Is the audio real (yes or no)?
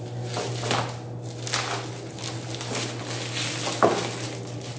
yes